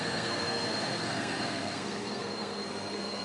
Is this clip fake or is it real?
fake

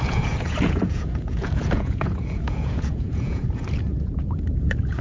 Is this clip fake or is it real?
fake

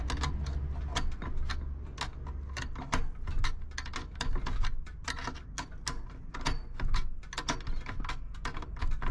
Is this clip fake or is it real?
real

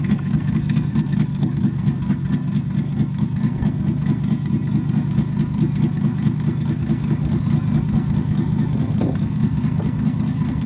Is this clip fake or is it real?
fake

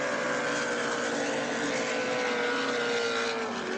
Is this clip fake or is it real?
real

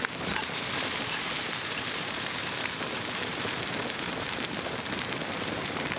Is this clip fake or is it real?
fake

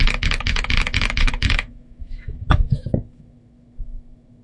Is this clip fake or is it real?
fake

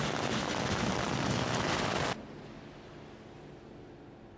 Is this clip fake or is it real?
real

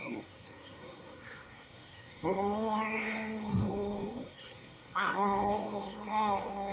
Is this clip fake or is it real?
fake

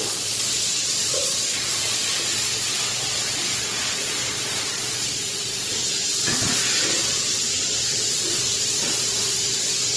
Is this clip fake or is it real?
fake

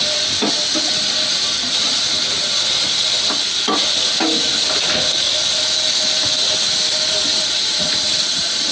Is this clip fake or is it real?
real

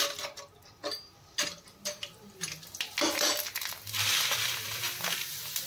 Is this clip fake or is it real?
real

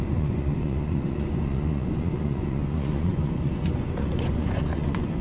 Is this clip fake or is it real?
fake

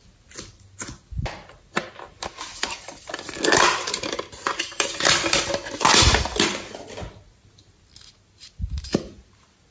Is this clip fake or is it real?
real